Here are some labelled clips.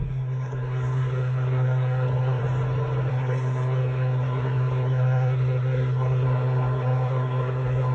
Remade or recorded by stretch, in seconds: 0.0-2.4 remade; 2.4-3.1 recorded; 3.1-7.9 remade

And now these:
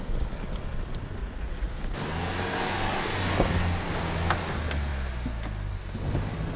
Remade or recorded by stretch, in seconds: 0.0-1.2 recorded; 1.2-1.7 remade; 1.7-6.6 recorded

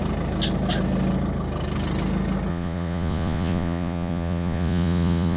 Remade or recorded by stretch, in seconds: 0.0-2.5 recorded; 2.5-5.4 remade

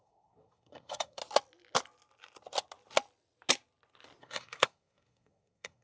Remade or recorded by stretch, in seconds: 0.0-1.2 remade; 1.2-4.2 recorded; 4.2-5.8 remade

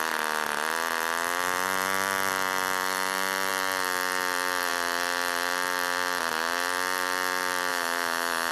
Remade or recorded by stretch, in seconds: 0.0-7.7 recorded; 7.7-8.5 remade

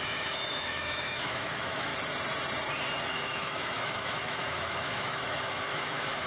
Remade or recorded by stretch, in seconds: 0.0-1.9 remade; 1.9-3.1 recorded; 3.1-6.3 remade

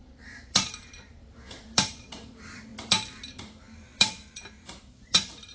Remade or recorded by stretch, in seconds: 0.0-2.7 remade; 2.7-3.3 recorded; 3.3-5.5 remade

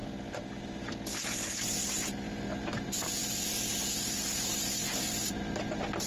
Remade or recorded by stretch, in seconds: 0.0-6.1 recorded